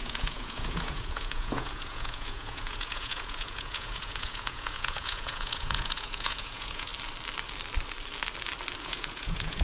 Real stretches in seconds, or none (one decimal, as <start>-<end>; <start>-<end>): 6.9-8.8